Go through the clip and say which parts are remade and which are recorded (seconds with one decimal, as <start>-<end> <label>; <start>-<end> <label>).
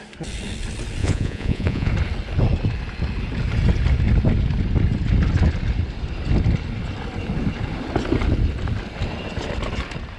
0.0-1.0 recorded; 1.0-1.9 remade; 1.9-10.2 recorded